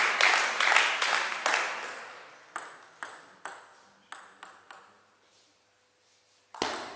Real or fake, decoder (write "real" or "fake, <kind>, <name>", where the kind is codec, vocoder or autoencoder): real